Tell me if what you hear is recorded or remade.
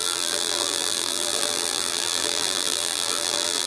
remade